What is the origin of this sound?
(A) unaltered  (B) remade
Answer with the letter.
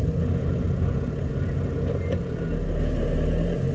A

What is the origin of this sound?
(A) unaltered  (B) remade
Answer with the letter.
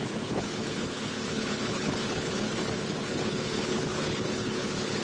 B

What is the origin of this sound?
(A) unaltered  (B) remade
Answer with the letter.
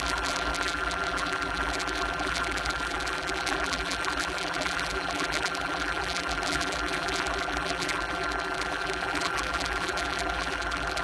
B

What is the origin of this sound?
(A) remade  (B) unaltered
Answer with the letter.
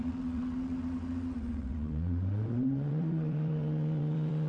A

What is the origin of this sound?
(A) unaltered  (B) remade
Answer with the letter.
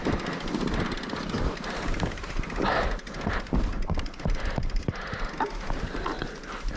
A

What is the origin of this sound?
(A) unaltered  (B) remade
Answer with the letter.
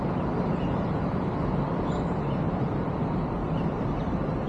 A